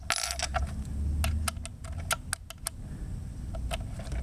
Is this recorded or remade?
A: recorded